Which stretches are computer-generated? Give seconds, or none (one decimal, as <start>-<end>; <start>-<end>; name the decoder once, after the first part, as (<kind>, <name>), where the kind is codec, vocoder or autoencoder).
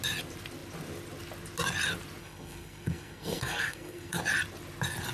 2.2-4.2 (codec, SNAC)